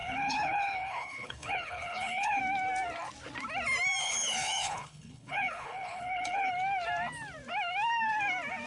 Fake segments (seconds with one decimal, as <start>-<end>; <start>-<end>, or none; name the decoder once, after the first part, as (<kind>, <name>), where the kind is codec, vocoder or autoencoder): 0.0-2.4 (codec, HILCodec); 4.0-6.5